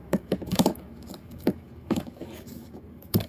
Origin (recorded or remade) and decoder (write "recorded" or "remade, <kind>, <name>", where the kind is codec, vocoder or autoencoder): remade, codec, DAC